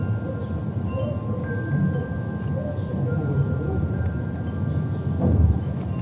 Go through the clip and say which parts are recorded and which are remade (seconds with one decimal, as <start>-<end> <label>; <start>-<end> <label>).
0.0-0.4 recorded; 0.4-1.8 remade; 1.8-2.9 recorded; 2.9-5.6 remade; 5.6-6.0 recorded